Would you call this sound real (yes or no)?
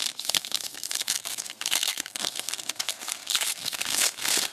no